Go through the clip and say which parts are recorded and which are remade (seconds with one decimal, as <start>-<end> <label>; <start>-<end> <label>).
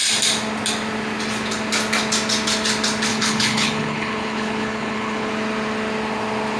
0.0-3.1 recorded; 3.1-5.3 remade; 5.3-6.6 recorded